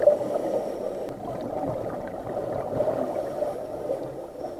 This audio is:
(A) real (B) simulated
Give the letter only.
A